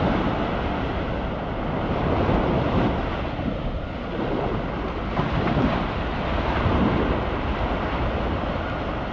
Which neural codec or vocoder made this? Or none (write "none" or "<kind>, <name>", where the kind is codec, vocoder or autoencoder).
none